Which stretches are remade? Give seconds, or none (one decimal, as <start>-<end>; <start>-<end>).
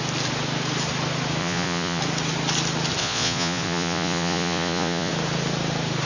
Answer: 1.4-2.0; 3.0-5.1